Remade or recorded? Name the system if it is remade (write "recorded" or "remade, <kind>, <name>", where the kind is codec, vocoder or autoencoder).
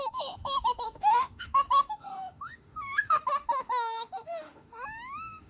remade, autoencoder, DAC-VAE